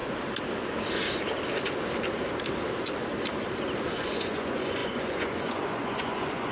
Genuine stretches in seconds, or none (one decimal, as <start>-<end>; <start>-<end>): 0.0-3.9